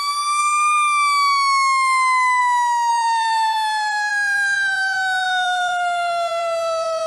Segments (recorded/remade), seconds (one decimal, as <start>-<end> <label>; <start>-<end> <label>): 0.0-2.9 recorded; 2.9-7.1 remade